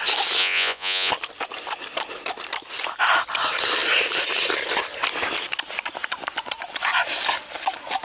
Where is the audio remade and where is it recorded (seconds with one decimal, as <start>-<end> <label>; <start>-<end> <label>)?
0.0-0.4 recorded; 0.4-1.1 remade; 1.1-8.0 recorded